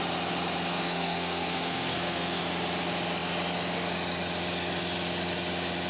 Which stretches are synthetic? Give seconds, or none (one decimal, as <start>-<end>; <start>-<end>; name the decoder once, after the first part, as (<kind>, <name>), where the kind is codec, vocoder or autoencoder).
0.7-2.4 (codec, SNAC)